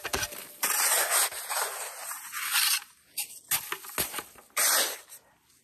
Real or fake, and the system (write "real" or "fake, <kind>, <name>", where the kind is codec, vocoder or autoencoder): real